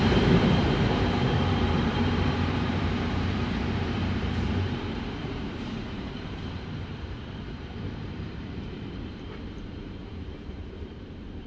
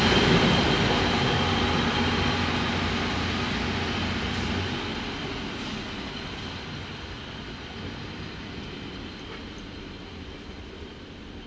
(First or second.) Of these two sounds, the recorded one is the second